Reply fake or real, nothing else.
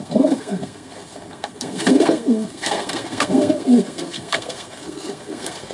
fake